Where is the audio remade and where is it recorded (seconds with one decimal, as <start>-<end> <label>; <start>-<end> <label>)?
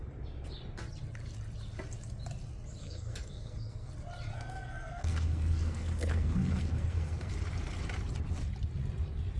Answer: 0.0-2.8 recorded; 2.8-3.9 remade; 3.9-4.3 recorded; 4.3-7.3 remade; 7.3-9.4 recorded